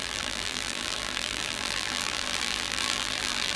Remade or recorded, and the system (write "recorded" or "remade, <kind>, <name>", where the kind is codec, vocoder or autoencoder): remade, vocoder, BigVGAN v2